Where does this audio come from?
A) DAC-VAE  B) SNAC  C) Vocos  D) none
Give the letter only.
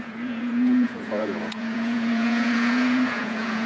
C